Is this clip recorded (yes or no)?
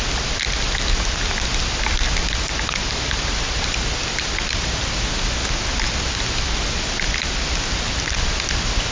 yes